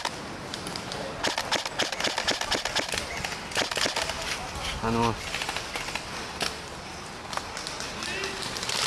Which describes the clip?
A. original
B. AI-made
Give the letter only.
A